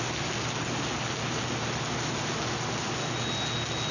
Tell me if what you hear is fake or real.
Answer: real